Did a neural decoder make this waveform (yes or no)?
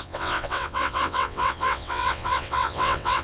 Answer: yes